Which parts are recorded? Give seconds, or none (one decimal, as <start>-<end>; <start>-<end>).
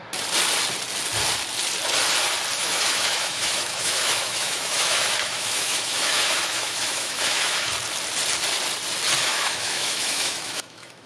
0.0-2.6; 7.7-9.3